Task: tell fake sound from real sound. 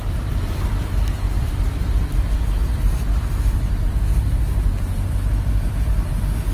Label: fake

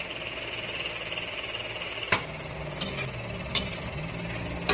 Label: real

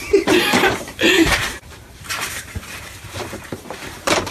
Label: fake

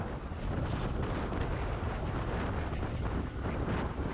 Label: real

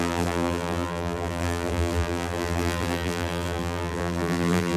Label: fake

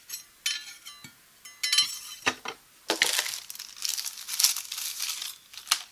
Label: real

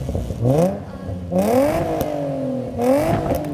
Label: real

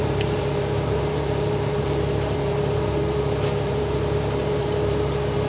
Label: fake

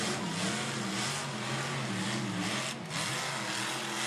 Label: real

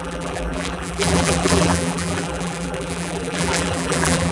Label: fake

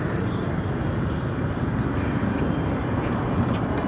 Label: fake